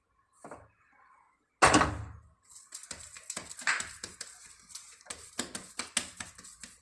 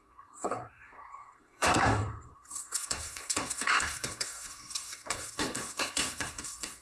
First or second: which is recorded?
first